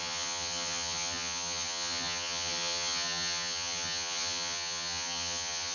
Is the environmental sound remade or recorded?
remade